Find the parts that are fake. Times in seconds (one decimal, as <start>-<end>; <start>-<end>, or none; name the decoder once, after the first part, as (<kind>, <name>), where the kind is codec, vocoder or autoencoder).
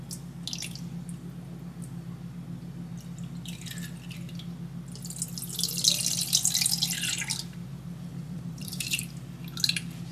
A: 7.7-9.0 (vocoder, BigVGAN v2)